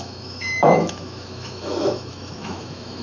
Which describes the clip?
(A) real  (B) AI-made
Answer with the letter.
B